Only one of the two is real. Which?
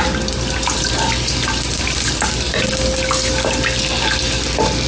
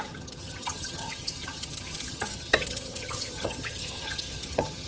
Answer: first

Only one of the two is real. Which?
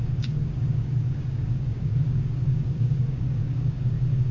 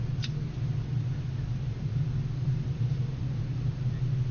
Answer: second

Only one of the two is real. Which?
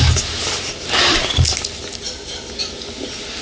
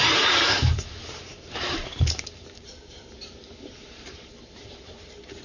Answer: first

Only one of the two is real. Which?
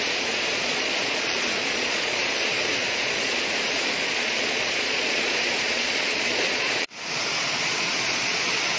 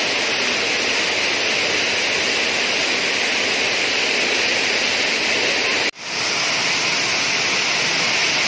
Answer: second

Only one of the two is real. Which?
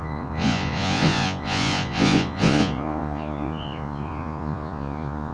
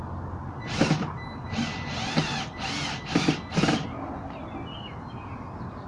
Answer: second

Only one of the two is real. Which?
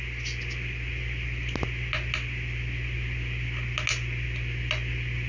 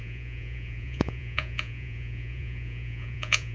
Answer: first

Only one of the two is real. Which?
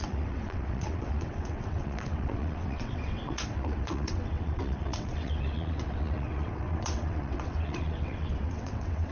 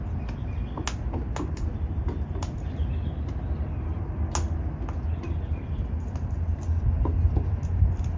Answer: second